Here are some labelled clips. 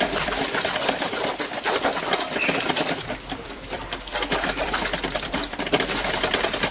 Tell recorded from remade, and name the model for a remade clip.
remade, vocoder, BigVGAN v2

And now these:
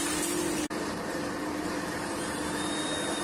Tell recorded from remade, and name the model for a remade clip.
remade, vocoder, BigVGAN v2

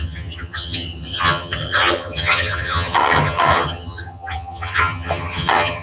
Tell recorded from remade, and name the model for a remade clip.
remade, vocoder, HiFi-GAN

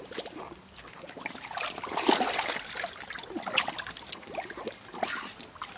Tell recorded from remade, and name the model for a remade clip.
remade, vocoder, BigVGAN v2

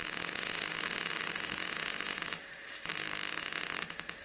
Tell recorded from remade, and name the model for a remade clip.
recorded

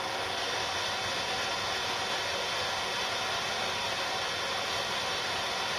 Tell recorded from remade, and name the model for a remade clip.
recorded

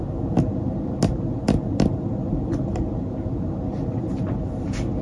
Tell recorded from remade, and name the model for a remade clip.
recorded